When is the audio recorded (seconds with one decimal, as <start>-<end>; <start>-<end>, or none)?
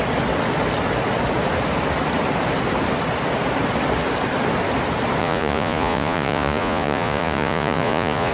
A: 0.0-5.2